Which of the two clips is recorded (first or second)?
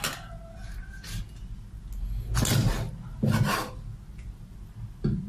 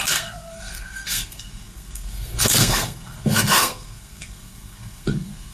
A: first